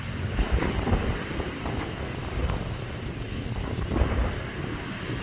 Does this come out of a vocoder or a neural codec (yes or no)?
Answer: yes